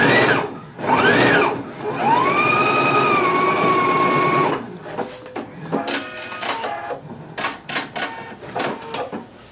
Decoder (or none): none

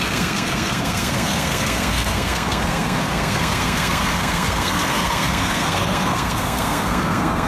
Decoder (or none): codec, SNAC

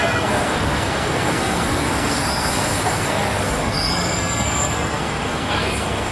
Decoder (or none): codec, SNAC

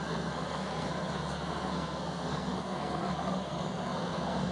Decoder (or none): codec, SNAC